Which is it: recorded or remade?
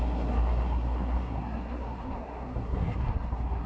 remade